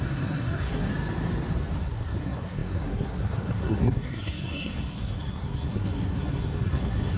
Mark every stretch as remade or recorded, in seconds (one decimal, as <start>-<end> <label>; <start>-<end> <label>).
0.0-0.9 remade; 0.9-1.8 recorded; 1.8-7.2 remade